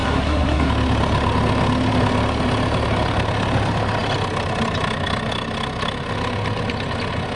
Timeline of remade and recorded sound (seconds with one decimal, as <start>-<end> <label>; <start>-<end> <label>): 0.0-0.7 remade; 0.7-7.4 recorded